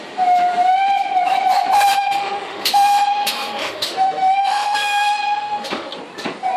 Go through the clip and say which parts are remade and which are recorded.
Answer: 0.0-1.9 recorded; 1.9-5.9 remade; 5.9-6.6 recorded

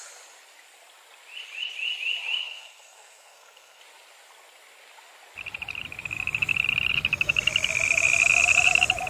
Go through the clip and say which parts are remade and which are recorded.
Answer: 0.0-2.4 recorded; 2.4-3.8 remade; 3.8-9.1 recorded

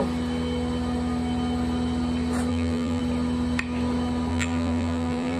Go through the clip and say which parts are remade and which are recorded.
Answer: 0.0-2.5 recorded; 2.5-3.0 remade; 3.0-4.3 recorded; 4.3-5.4 remade

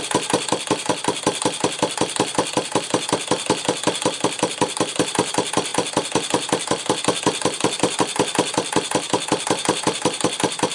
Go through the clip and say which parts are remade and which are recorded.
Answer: 0.0-10.7 recorded